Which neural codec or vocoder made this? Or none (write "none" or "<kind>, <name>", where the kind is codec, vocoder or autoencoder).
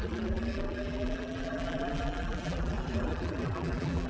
vocoder, BigVGAN v2